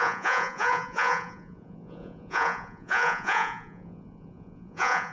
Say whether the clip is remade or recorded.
remade